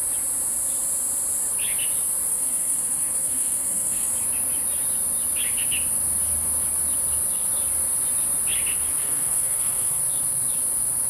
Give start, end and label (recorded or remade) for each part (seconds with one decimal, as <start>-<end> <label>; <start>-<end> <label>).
0.0-2.3 recorded; 2.3-4.1 remade; 4.1-9.0 recorded; 9.0-10.0 remade; 10.0-11.1 recorded